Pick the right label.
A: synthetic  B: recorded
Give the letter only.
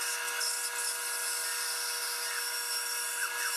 B